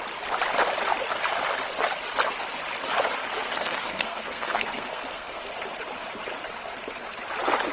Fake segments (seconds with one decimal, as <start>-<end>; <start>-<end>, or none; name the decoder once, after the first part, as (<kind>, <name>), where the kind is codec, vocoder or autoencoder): 3.5-5.4 (codec, SNAC)